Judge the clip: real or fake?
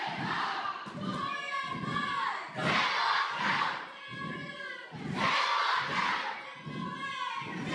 real